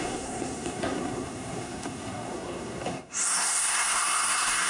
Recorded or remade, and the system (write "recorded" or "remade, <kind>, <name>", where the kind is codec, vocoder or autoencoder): remade, codec, SNAC